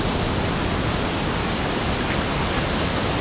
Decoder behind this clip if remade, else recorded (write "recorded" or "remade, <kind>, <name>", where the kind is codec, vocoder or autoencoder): recorded